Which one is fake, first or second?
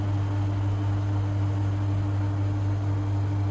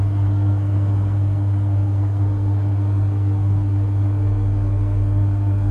second